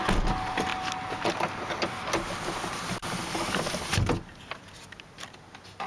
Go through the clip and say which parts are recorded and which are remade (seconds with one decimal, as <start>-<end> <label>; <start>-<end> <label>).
0.0-5.9 recorded